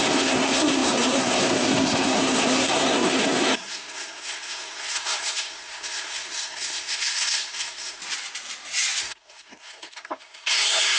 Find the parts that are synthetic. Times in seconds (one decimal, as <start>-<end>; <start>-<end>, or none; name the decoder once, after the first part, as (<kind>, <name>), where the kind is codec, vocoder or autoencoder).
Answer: 0.0-8.0 (codec, SNAC); 9.0-11.0